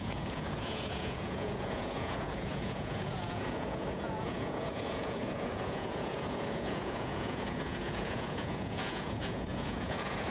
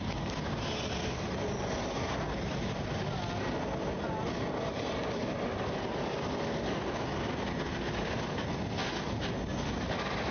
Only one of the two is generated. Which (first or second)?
first